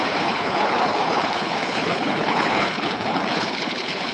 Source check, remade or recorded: remade